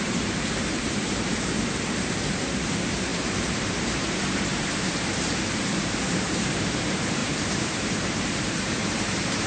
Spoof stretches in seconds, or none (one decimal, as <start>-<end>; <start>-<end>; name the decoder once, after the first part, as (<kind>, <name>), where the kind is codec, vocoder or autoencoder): 0.0-1.6 (vocoder, BigVGAN v2); 2.4-9.5